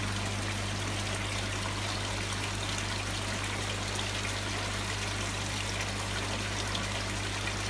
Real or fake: real